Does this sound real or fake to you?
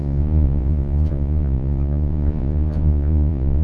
fake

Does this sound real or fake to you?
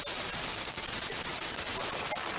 real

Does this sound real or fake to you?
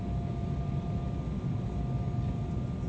real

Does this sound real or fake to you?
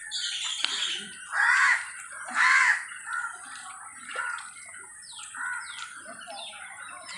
real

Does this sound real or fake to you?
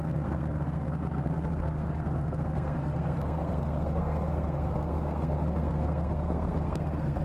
fake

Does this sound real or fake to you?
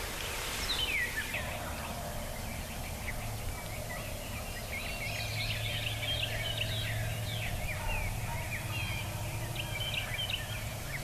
real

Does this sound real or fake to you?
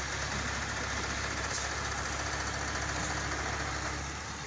real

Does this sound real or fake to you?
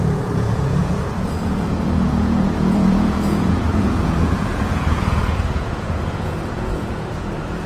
fake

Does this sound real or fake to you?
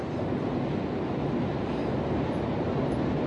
real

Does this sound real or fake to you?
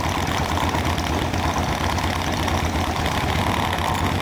real